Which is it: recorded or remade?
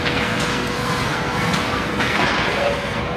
remade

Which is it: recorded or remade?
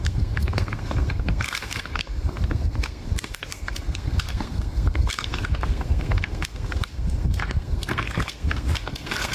remade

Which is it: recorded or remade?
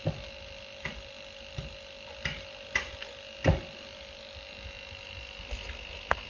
recorded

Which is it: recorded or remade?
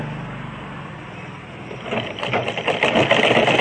recorded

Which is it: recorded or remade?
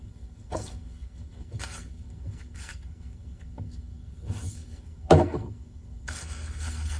remade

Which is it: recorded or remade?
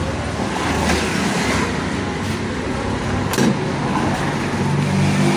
recorded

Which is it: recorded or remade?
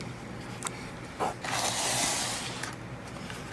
recorded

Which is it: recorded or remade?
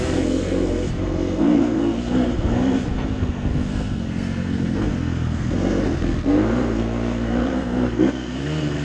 remade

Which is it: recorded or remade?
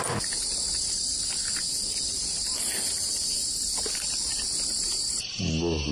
recorded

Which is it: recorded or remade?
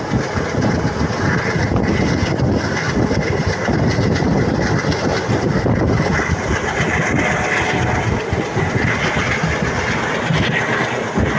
recorded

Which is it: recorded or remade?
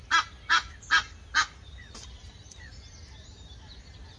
recorded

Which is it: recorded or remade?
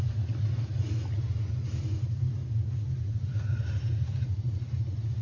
recorded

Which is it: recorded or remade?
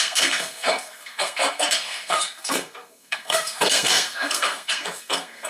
remade